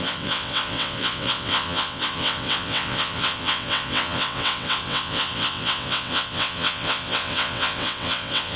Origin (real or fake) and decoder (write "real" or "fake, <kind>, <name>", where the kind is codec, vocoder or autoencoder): fake, vocoder, WaveNeXt